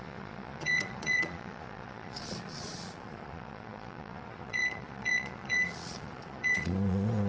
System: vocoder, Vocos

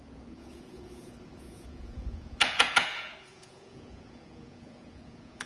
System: vocoder, Vocos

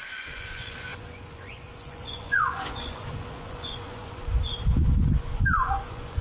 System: vocoder, Vocos